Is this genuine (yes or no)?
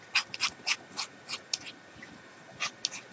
yes